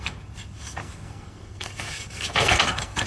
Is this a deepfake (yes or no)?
yes